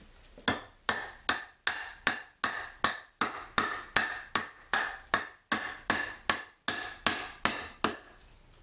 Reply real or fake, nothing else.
real